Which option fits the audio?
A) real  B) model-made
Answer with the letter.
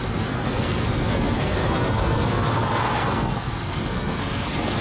B